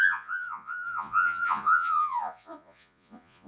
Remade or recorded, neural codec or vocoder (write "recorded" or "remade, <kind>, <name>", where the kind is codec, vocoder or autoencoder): remade, vocoder, Vocos